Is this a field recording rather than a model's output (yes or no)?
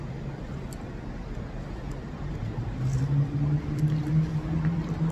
yes